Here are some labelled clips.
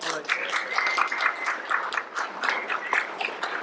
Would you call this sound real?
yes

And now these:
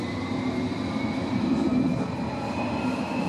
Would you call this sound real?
no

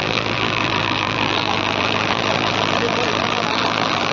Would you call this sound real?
no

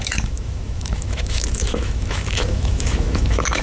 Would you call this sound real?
no